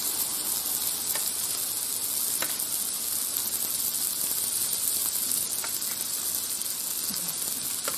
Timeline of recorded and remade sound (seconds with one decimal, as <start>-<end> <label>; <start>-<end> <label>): 0.0-8.0 recorded